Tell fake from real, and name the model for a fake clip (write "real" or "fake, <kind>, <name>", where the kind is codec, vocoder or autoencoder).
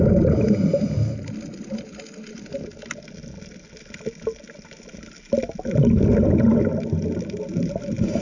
real